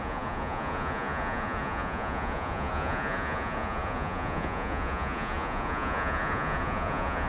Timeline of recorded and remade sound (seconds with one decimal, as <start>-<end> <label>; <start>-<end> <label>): 0.0-7.3 remade